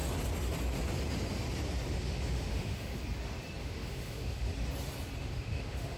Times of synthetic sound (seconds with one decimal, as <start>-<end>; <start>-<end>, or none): 1.9-3.0; 3.6-4.5; 5.2-6.0